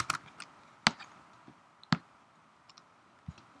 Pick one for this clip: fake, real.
real